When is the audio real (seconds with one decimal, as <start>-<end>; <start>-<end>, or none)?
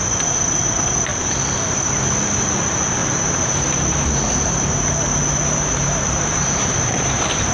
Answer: 0.0-3.0